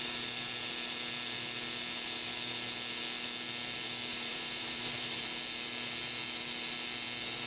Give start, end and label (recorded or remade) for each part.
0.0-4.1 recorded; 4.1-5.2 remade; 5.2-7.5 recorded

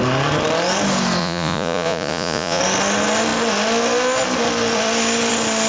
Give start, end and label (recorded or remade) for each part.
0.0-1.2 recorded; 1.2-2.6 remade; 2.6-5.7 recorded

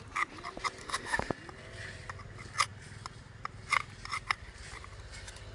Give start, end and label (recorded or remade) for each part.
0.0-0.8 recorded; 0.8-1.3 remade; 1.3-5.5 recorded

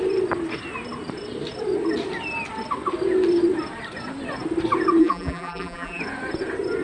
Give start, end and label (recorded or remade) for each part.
0.0-5.0 recorded; 5.0-6.0 remade; 6.0-6.8 recorded

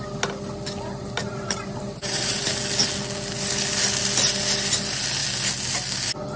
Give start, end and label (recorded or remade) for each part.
0.0-1.2 recorded; 1.2-2.4 remade; 2.4-6.4 recorded

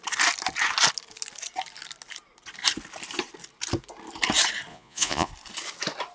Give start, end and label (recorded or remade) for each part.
0.0-4.7 recorded; 4.7-5.3 remade; 5.3-6.1 recorded

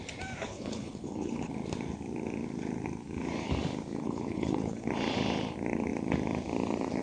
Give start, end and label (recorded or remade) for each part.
0.0-0.5 recorded; 0.5-1.5 remade; 1.5-4.0 recorded; 4.0-4.9 remade; 4.9-7.0 recorded

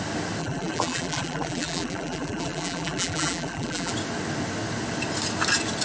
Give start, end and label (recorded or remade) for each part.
0.0-0.4 recorded; 0.4-3.9 remade; 3.9-5.8 recorded